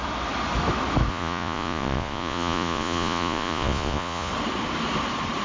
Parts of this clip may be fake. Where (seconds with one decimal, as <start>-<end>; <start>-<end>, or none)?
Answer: 1.1-4.3